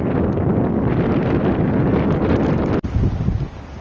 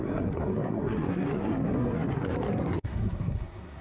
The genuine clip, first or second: first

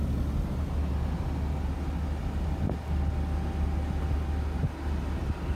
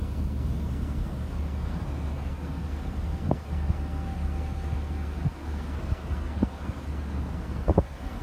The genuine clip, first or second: first